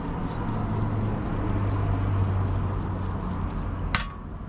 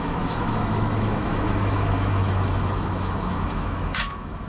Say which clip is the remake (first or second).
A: second